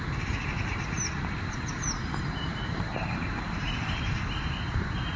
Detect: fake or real fake